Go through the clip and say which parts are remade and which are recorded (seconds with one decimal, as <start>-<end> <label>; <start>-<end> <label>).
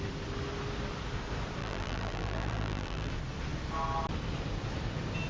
0.0-1.6 recorded; 1.6-3.1 remade; 3.1-5.3 recorded